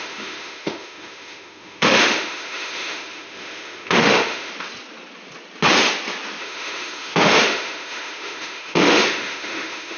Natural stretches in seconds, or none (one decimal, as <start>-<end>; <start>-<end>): 4.5-6.4